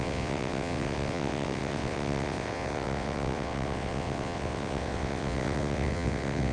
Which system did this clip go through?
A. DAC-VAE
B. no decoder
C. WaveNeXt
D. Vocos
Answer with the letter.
C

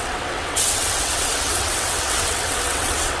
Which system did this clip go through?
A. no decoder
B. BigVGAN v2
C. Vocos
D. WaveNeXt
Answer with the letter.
D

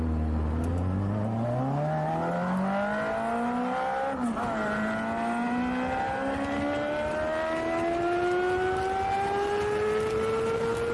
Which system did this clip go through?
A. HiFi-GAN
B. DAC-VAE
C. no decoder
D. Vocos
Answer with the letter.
C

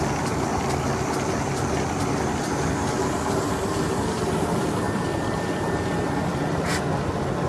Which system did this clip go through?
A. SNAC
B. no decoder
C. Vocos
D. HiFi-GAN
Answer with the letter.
B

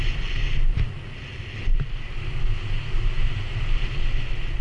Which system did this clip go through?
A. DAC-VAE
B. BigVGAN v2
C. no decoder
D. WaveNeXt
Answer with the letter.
C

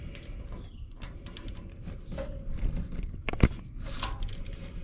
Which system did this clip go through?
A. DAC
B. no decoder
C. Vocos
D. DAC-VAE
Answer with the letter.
B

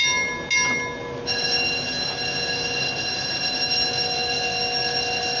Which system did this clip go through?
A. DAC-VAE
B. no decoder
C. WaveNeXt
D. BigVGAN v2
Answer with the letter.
B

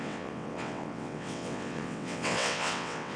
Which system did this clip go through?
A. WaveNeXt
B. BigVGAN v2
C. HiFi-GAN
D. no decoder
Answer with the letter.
A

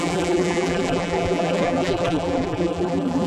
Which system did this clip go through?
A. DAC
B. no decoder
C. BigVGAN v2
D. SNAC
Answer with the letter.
C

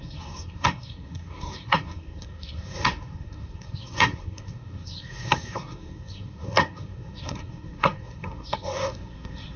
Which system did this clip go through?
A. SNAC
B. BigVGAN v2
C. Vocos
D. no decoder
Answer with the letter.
A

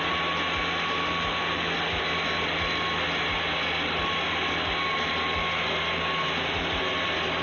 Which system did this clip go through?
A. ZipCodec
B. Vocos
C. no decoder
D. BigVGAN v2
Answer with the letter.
C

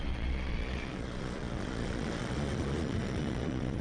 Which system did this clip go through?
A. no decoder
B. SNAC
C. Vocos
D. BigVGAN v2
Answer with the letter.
C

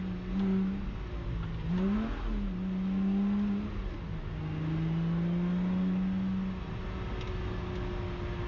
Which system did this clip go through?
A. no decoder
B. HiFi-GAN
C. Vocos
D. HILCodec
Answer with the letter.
A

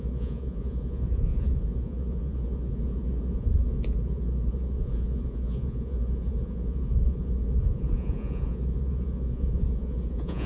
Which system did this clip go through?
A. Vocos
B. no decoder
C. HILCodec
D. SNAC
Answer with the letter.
A